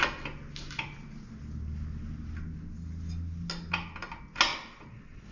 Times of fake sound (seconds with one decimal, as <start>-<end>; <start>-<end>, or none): 4.5-5.3